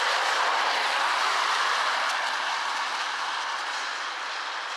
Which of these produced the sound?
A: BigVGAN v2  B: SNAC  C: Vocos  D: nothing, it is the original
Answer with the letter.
D